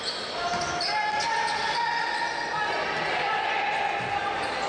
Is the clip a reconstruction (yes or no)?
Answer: no